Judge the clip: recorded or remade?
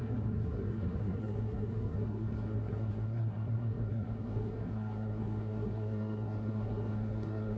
remade